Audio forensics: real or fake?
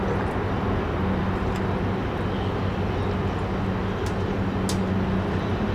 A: real